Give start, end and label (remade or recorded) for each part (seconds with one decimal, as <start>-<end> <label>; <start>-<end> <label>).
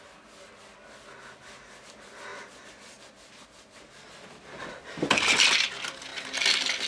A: 0.0-6.9 recorded